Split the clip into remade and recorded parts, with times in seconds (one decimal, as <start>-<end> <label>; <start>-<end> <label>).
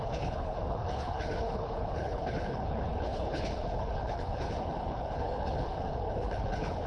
0.0-6.9 remade